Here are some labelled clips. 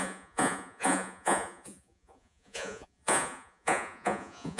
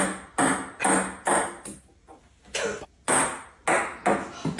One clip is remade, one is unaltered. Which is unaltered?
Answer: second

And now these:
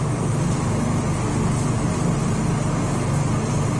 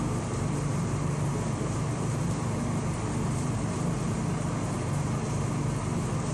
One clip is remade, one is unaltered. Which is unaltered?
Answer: first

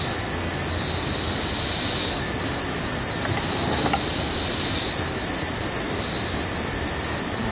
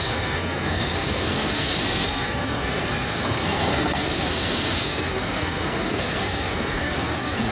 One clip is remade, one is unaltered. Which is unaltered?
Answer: first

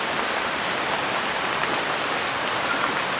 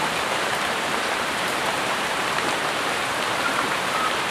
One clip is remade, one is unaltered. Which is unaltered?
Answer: first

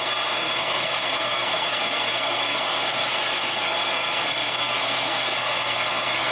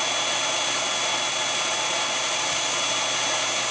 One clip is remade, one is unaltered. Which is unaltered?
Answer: second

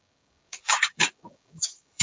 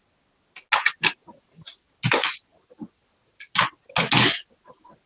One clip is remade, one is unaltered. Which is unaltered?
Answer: second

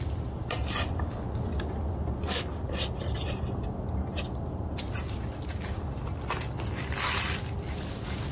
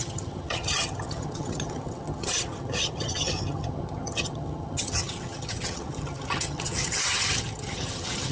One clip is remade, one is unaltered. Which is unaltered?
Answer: first